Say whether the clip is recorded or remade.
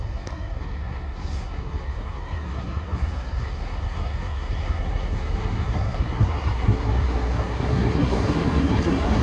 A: remade